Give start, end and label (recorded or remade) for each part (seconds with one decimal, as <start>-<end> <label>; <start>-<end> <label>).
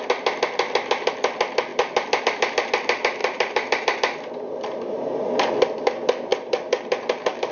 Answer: 0.0-1.7 recorded; 1.7-2.2 remade; 2.2-3.2 recorded; 3.2-4.3 remade; 4.3-6.3 recorded; 6.3-7.5 remade